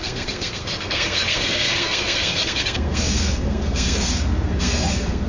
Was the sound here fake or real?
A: fake